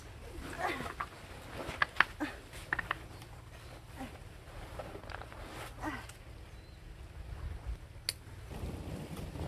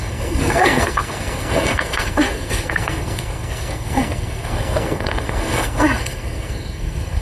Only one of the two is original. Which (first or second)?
first